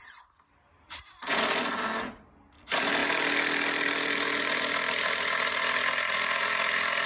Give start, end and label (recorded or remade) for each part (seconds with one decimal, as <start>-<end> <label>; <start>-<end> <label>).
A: 0.0-7.1 recorded